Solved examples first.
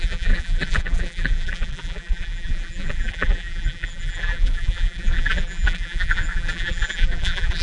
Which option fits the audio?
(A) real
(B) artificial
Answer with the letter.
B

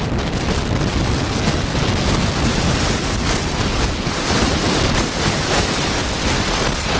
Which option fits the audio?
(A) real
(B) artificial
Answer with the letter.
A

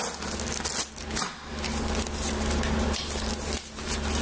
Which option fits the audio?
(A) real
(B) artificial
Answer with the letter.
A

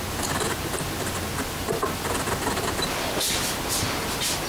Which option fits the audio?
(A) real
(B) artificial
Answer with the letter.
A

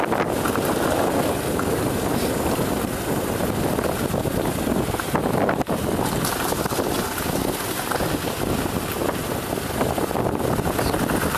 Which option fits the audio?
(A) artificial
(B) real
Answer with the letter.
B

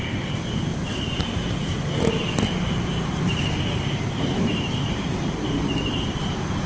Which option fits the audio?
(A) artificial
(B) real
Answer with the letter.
A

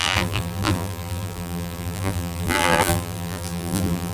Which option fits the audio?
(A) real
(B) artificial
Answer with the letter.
B